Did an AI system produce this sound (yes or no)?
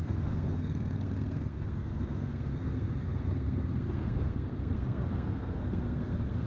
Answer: yes